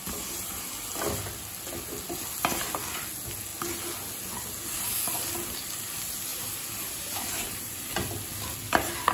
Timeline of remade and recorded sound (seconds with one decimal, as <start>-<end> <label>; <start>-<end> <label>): 0.0-6.3 recorded; 6.3-7.9 remade; 7.9-9.1 recorded